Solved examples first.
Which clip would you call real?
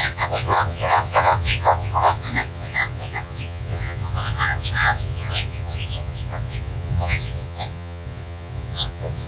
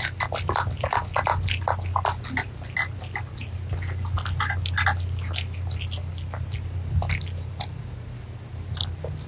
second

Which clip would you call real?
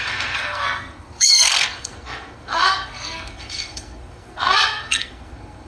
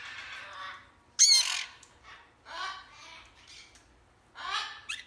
second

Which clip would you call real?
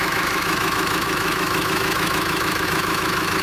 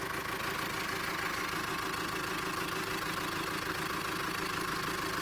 second